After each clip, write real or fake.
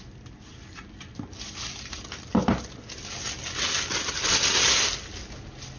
real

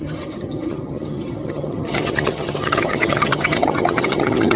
fake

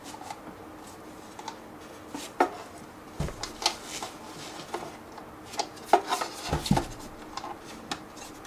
real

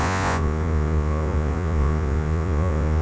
fake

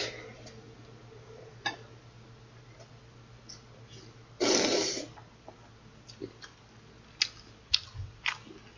real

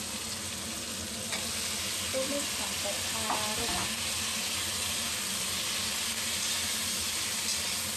real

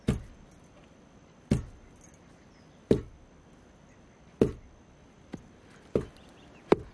real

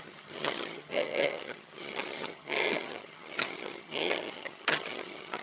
fake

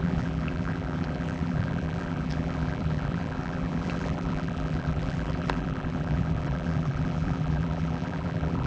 fake